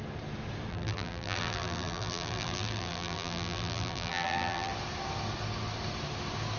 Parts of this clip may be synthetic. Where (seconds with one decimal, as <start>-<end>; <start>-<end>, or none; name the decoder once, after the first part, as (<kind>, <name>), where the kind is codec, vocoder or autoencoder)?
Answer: 0.7-4.7 (vocoder, BigVGAN v2)